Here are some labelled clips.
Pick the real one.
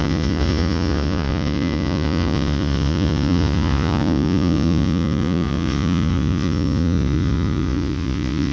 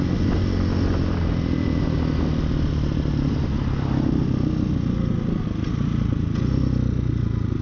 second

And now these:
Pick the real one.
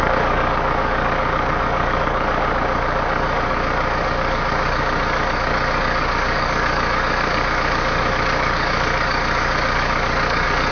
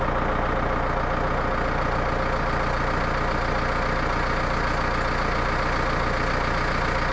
second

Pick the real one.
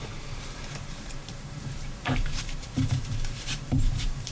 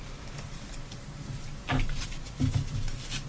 second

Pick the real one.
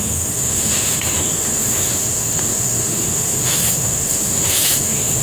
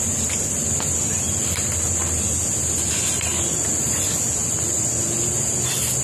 second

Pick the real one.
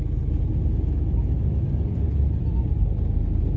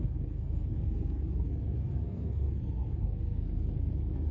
first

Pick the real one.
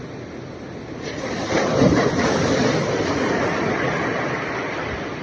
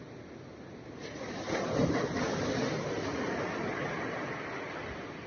second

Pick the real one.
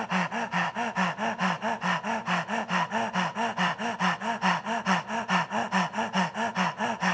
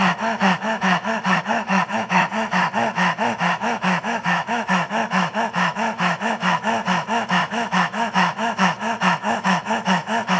first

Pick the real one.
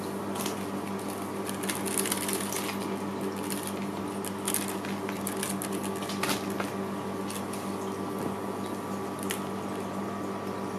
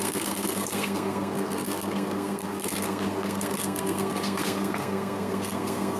first